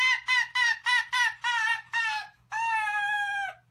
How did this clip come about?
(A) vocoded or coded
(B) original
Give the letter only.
B